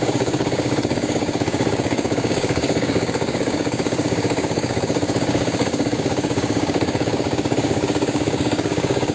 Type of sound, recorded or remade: remade